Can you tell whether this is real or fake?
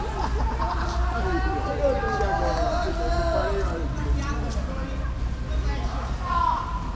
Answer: real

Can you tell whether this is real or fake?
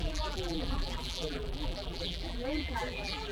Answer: fake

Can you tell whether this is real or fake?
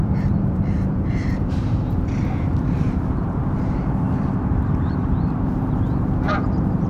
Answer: fake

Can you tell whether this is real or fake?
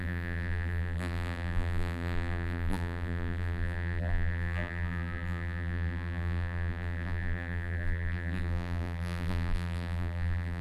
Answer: fake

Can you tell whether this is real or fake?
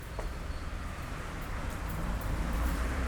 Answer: fake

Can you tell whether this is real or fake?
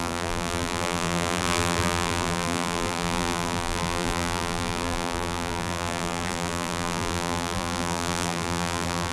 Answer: fake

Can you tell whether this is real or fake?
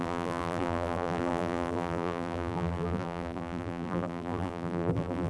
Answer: fake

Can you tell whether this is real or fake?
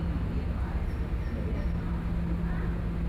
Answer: real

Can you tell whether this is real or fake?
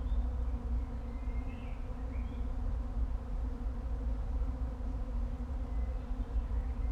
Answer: real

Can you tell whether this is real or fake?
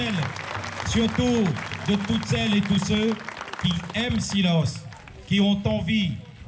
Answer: real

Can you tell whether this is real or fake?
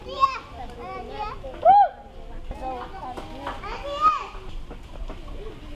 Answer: real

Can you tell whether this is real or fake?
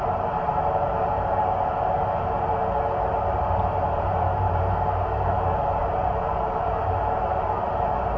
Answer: fake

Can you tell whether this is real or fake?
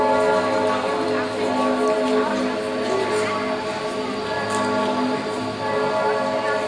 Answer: real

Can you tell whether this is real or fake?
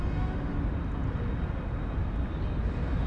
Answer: real